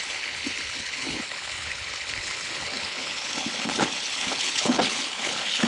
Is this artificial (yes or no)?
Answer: yes